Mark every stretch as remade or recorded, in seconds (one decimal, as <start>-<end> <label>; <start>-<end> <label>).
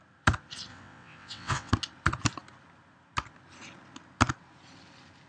0.0-0.7 recorded; 0.7-1.7 remade; 1.7-5.3 recorded